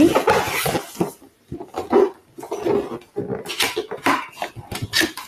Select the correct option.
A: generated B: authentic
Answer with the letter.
B